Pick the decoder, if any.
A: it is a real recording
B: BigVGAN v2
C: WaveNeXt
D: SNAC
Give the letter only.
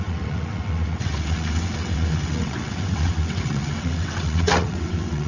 C